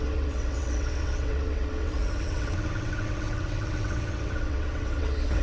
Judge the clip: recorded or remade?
remade